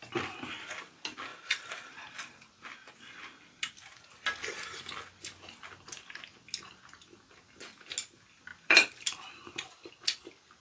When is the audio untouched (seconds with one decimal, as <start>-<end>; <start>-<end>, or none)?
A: 0.0-1.3; 2.9-8.5; 9.9-10.6

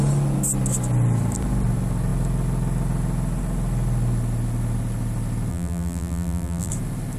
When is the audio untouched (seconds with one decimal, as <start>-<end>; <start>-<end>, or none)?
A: 0.0-5.5; 6.7-7.2